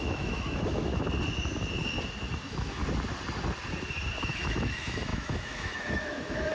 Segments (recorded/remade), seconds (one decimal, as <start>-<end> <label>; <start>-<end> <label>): 0.0-0.9 remade; 0.9-2.3 recorded; 2.3-2.8 remade; 2.8-4.2 recorded; 4.2-6.5 remade